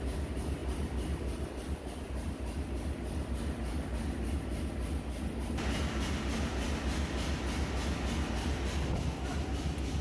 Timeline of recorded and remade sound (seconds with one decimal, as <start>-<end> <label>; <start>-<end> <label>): 0.0-10.0 recorded